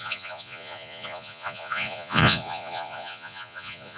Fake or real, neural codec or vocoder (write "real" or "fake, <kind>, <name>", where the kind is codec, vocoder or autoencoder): fake, vocoder, Vocos